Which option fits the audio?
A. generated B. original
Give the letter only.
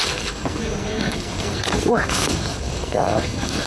A